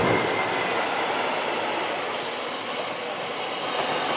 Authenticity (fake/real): real